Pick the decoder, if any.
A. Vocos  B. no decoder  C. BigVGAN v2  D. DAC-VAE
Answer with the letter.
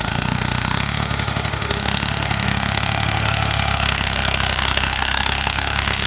D